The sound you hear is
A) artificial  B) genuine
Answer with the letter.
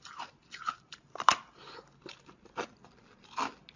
B